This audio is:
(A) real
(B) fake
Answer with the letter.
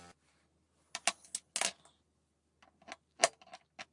A